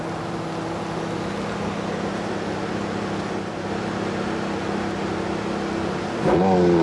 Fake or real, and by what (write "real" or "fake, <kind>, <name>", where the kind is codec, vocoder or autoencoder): real